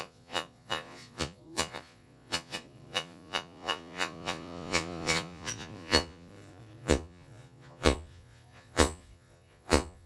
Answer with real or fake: fake